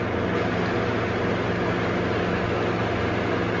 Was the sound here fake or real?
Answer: real